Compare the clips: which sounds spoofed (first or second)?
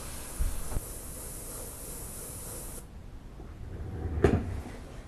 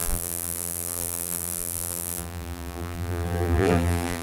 second